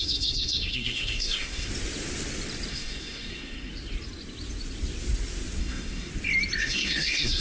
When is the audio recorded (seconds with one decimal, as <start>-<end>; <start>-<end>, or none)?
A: 1.7-2.7; 3.7-5.6; 6.1-6.6